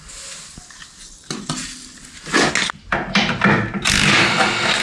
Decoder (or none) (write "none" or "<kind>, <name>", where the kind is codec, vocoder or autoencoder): none